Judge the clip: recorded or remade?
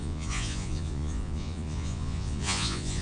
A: remade